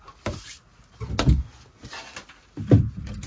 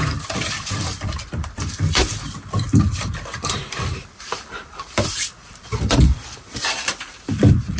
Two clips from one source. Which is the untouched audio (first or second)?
first